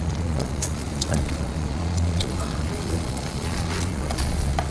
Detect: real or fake fake